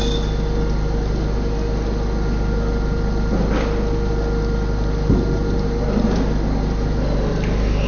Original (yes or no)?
yes